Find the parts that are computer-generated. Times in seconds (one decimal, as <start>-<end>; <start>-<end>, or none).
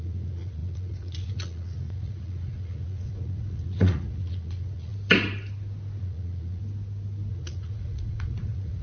0.0-4.9; 6.0-6.6; 7.3-8.8